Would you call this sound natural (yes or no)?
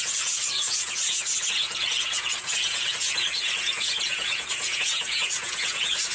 no